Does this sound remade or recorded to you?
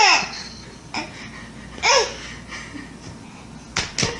recorded